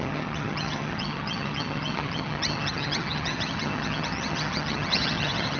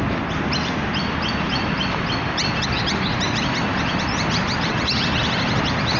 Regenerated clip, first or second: first